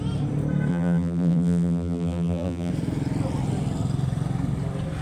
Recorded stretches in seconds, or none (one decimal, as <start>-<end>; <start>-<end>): 0.0-0.7; 2.7-5.0